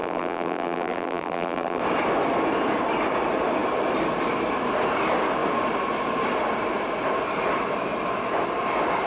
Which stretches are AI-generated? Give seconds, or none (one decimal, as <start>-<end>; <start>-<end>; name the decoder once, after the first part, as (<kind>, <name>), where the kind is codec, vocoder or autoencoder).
0.0-1.8 (vocoder, BigVGAN v2)